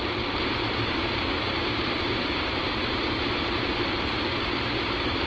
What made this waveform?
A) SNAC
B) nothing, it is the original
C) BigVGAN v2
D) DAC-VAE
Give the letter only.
C